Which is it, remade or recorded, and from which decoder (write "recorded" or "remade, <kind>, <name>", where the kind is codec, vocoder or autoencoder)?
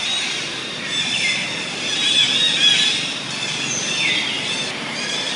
recorded